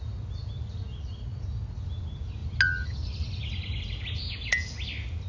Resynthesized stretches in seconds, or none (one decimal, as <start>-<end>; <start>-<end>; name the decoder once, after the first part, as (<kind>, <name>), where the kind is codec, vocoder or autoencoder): none